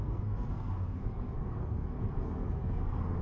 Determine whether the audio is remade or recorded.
remade